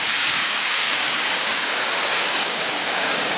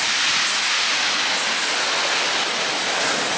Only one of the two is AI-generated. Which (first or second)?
first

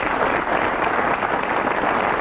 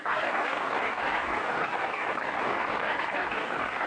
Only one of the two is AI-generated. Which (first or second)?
second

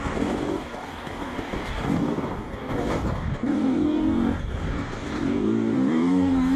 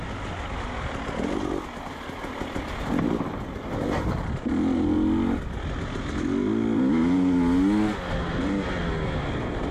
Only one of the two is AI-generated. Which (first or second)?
first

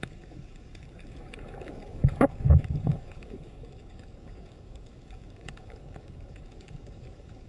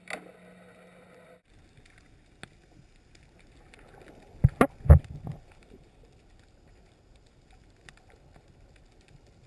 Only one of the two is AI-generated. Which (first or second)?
first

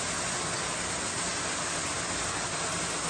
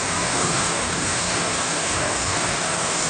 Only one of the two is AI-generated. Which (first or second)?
second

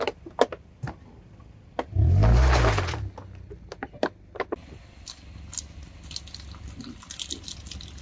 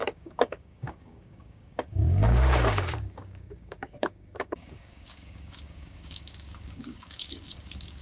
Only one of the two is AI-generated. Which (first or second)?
second